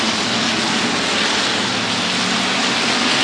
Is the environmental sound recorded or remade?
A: recorded